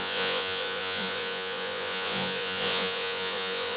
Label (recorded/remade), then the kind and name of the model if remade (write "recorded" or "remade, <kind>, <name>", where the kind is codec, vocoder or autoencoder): remade, vocoder, Vocos